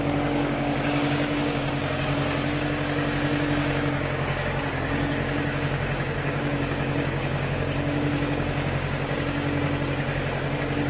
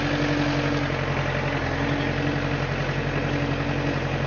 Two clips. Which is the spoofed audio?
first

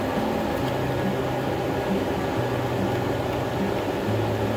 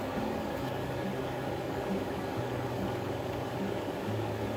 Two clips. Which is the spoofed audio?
second